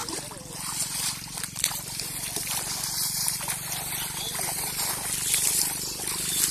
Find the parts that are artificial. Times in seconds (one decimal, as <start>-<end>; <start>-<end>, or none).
0.0-6.5